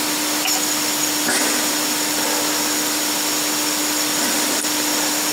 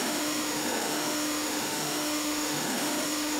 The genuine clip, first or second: first